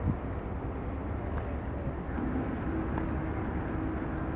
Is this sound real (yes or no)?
yes